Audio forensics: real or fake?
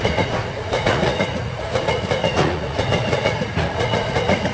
fake